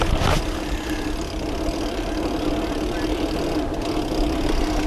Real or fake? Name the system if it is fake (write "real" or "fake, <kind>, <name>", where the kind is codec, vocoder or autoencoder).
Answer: real